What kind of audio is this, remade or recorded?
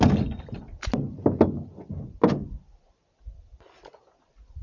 recorded